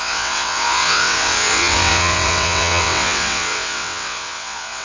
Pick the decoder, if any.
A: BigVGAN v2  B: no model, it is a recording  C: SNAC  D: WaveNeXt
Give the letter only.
D